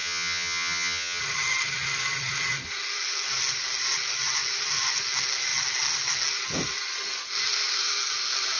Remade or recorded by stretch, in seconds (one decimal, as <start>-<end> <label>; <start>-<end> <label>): 0.0-1.2 remade; 1.2-8.6 recorded